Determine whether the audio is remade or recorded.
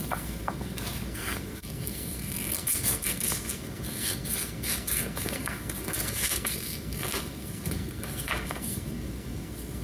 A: remade